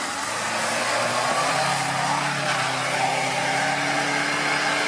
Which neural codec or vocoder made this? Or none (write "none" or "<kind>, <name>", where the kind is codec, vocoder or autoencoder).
none